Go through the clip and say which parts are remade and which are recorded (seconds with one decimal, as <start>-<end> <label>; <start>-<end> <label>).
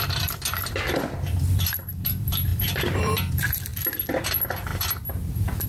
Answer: 0.0-3.7 remade; 3.7-4.2 recorded; 4.2-4.7 remade; 4.7-5.3 recorded; 5.3-5.7 remade